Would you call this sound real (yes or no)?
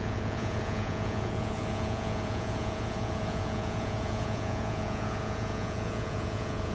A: no